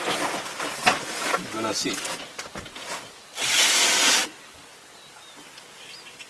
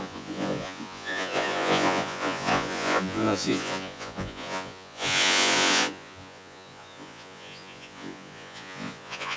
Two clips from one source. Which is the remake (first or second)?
second